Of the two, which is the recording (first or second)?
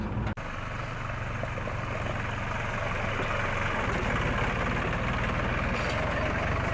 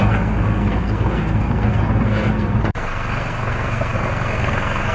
first